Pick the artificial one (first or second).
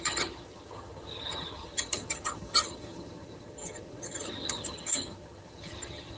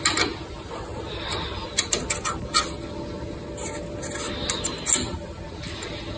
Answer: first